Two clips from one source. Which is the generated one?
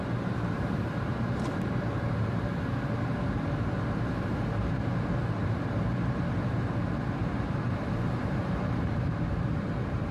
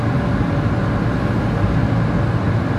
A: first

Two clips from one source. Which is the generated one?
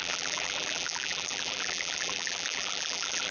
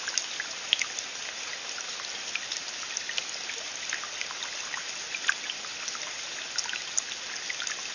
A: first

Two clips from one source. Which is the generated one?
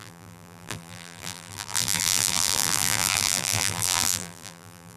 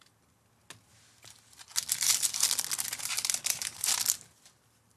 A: first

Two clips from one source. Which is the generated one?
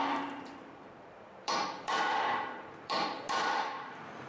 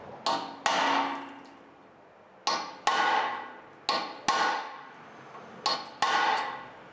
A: first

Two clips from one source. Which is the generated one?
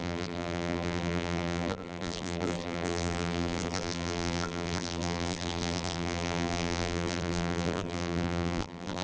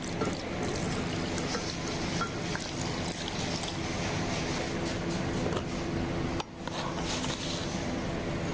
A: first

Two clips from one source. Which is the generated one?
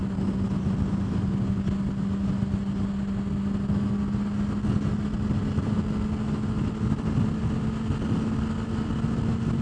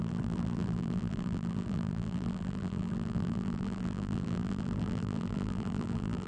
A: second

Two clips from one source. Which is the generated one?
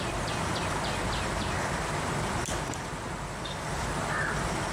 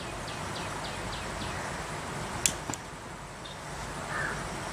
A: first